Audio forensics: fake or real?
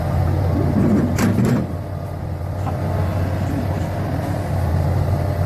real